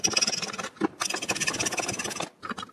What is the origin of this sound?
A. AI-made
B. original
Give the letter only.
B